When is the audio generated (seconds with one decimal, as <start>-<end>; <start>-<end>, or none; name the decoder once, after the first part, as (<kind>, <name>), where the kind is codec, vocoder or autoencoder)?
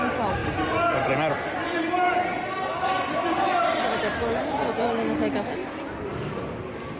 none